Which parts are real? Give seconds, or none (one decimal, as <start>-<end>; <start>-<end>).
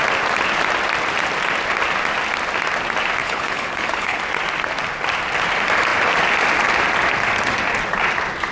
0.0-3.2; 4.2-8.5